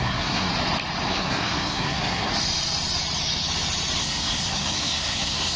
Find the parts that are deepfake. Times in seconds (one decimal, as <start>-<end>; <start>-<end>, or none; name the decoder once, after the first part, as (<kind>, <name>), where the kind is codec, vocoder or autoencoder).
0.0-0.5 (codec, SNAC); 1.1-2.3; 4.0-5.6